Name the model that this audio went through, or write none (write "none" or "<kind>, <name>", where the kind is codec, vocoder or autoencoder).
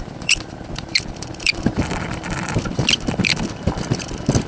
vocoder, BigVGAN v2